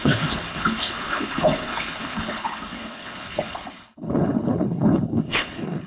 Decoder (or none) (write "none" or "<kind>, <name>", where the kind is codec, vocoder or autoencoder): codec, HILCodec